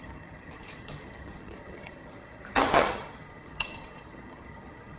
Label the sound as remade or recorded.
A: remade